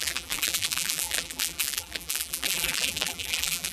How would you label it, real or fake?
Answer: fake